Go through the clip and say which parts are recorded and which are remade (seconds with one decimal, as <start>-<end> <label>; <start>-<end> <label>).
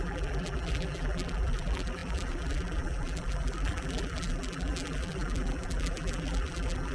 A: 0.0-6.9 remade